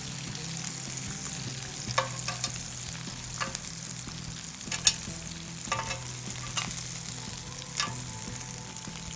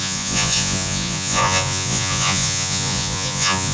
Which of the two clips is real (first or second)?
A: first